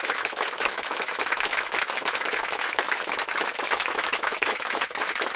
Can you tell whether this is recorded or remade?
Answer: remade